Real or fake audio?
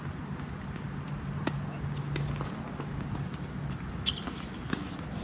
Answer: real